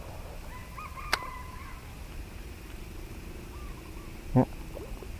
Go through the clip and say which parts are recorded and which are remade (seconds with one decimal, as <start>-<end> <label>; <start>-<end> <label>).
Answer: 0.0-5.2 recorded